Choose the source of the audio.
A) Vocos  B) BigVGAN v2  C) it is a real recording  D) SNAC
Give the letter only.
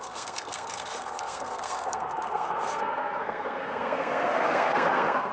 D